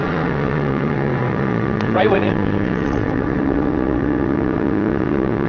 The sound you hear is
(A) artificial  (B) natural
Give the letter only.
A